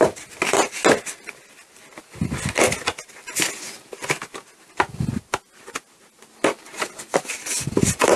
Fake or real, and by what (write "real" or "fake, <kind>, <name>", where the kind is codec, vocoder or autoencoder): real